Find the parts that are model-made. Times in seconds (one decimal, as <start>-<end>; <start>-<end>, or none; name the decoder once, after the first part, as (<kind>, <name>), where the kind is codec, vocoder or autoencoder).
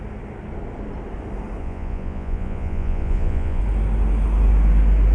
1.6-3.6 (vocoder, Vocos)